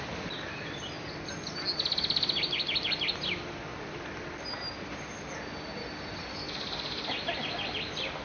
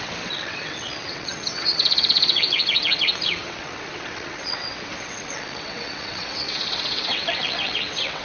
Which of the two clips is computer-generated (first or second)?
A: second